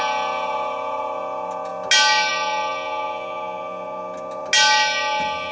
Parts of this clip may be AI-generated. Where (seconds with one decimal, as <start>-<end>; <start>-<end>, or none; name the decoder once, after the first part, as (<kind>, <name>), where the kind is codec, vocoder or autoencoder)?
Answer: none

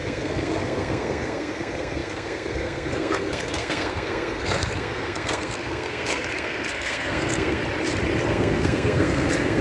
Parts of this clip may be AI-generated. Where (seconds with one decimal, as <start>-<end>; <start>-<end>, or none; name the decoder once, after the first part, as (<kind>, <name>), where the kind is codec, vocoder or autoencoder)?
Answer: 0.0-7.6 (codec, SNAC); 8.3-9.6

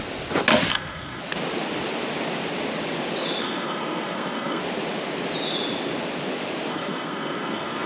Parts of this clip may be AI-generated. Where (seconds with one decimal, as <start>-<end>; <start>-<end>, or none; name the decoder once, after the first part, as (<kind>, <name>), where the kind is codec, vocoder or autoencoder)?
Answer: 0.7-1.2 (codec, SNAC); 3.4-4.6; 6.7-7.9